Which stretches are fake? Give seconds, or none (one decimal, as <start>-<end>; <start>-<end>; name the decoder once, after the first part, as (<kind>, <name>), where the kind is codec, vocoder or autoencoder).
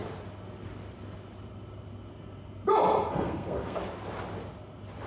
3.1-3.8 (codec, SNAC)